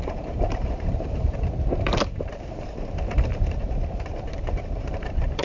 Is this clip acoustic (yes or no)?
no